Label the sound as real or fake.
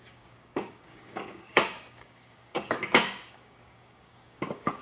fake